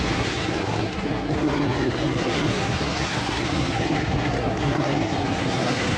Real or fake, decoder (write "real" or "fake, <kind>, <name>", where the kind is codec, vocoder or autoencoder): fake, codec, SNAC